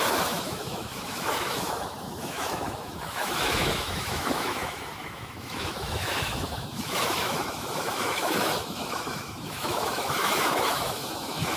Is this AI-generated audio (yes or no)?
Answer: yes